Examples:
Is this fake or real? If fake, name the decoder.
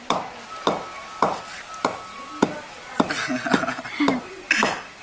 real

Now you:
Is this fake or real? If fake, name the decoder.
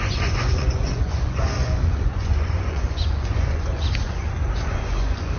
fake, vocoder, Vocos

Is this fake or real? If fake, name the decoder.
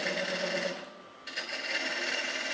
real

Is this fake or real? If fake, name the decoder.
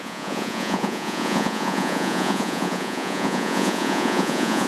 fake, vocoder, Vocos